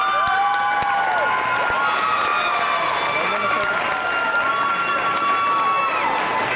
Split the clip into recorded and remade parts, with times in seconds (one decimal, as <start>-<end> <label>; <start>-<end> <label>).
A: 0.0-6.6 recorded